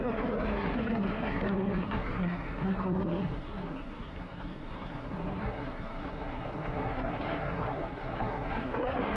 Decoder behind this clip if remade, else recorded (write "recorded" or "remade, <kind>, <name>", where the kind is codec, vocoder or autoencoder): remade, codec, SNAC